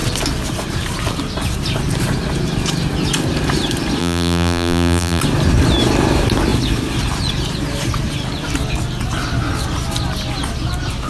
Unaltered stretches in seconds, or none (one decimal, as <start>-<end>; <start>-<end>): 0.0-4.0; 5.2-11.1